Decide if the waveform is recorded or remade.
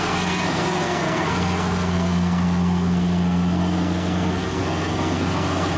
remade